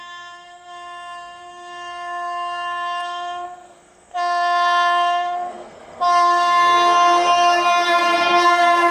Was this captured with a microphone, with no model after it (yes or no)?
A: no